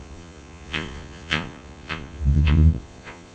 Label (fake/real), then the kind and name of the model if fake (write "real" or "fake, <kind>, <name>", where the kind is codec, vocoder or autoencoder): fake, vocoder, Vocos